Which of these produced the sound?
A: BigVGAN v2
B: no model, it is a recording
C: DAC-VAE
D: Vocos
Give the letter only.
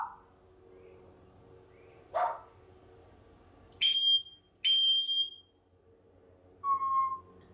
B